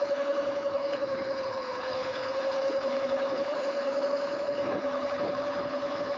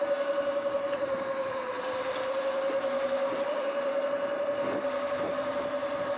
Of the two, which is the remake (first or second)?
first